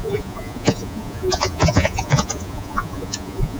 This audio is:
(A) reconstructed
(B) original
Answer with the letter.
A